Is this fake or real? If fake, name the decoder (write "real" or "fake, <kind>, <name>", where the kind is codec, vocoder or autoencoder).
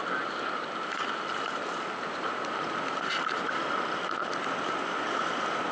real